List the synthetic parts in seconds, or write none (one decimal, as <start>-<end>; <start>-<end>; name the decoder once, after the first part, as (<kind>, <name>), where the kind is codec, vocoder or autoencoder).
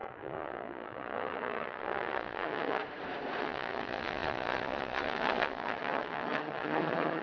0.0-2.8 (vocoder, Vocos); 3.4-7.2